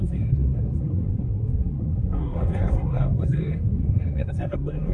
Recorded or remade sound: remade